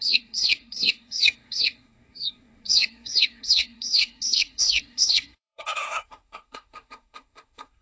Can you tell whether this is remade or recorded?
remade